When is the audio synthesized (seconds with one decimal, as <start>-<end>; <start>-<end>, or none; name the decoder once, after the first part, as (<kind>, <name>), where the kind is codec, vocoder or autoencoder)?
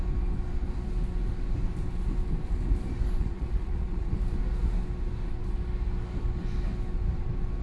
3.2-4.2 (vocoder, Vocos)